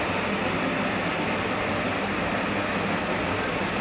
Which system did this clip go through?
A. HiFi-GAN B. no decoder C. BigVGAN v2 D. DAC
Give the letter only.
B